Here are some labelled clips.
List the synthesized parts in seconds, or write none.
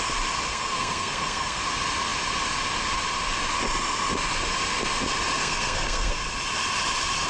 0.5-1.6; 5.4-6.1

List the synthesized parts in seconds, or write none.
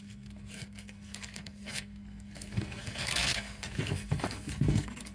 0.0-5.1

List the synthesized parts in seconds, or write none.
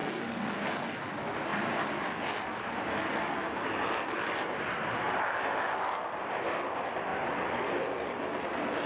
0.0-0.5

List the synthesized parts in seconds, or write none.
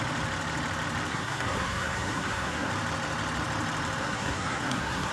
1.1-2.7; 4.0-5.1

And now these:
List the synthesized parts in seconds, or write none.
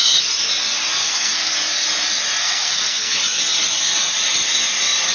1.0-1.5; 2.4-3.2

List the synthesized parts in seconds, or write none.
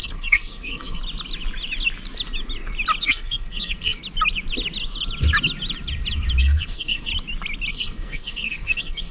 0.0-1.0; 3.0-4.0; 6.4-7.1; 7.7-9.1